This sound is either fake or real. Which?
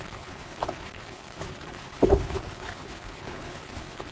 fake